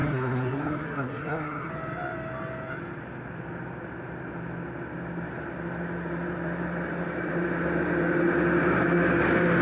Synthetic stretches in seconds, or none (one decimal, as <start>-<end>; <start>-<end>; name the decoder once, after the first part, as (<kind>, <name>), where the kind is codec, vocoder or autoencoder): 0.0-1.7 (codec, SNAC)

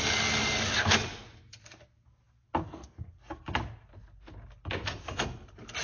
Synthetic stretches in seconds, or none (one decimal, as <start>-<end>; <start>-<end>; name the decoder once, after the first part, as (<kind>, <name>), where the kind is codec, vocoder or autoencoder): 2.6-3.1 (codec, SNAC)